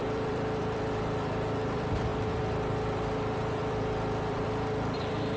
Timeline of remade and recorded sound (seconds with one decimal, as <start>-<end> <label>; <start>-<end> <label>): 0.0-5.4 remade